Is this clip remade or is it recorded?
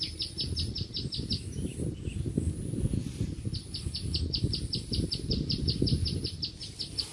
recorded